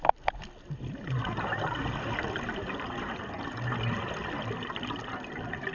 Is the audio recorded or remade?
recorded